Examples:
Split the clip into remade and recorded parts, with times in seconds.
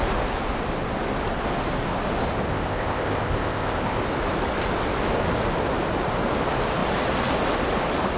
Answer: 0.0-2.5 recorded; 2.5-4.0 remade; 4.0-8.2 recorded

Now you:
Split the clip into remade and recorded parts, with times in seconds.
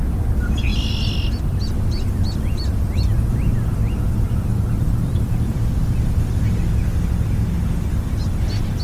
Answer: 0.0-8.8 recorded